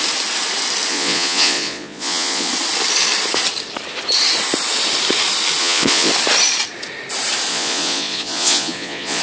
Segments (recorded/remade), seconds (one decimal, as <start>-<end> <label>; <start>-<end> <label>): 0.0-0.9 recorded; 0.9-2.5 remade; 2.5-5.6 recorded; 5.6-6.1 remade; 6.1-7.5 recorded; 7.5-9.2 remade